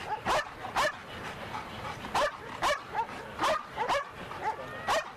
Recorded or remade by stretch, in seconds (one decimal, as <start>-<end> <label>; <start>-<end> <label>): 0.0-5.2 recorded